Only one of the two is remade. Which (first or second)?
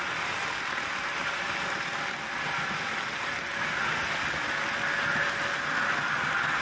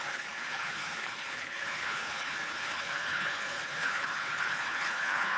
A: second